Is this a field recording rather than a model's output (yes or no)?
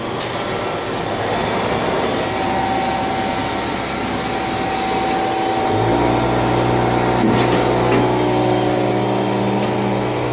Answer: yes